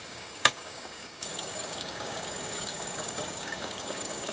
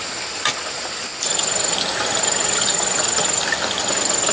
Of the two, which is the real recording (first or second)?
second